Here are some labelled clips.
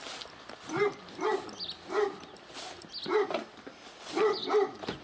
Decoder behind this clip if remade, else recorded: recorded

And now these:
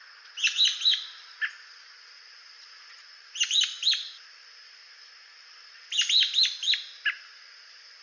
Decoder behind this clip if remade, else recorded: recorded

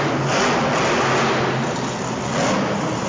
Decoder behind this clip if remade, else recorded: recorded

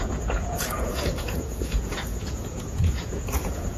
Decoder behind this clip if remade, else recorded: remade, vocoder, Vocos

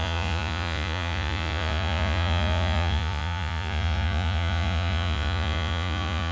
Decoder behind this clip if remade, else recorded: remade, vocoder, Vocos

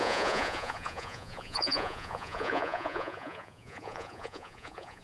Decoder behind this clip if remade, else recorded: remade, vocoder, Vocos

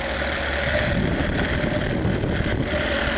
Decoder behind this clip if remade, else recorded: recorded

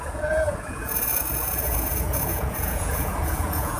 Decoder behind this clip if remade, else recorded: remade, vocoder, Vocos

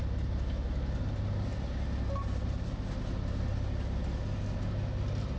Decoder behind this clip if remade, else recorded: recorded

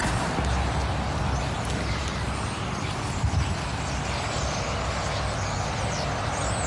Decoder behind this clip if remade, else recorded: recorded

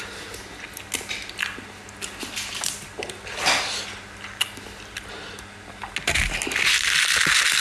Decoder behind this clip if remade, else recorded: recorded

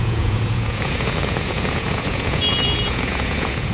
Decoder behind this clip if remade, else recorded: remade, vocoder, Vocos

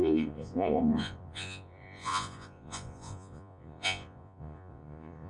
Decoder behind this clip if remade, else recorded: remade, vocoder, Vocos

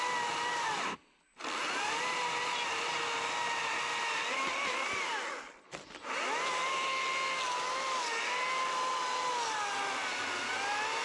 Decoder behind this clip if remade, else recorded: recorded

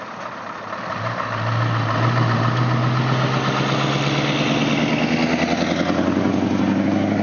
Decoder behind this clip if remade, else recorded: recorded